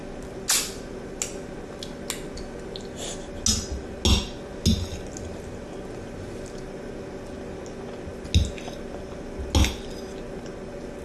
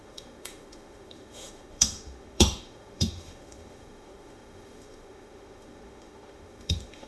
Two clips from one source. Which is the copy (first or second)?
second